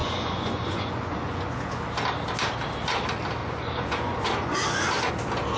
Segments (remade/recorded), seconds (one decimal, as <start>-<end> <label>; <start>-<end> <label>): 0.0-1.8 remade; 1.8-3.4 recorded; 3.4-5.1 remade; 5.1-5.6 recorded